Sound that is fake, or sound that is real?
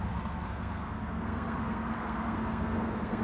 fake